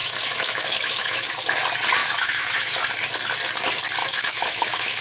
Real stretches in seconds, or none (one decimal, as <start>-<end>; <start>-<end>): 1.4-2.0; 2.7-4.0